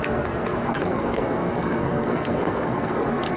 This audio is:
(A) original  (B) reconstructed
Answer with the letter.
B